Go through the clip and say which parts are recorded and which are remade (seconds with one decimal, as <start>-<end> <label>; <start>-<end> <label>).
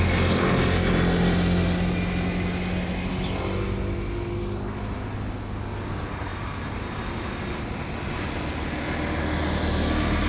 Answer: 0.0-10.3 recorded